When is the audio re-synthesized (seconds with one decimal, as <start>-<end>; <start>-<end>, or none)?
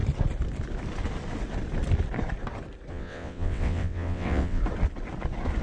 2.9-4.6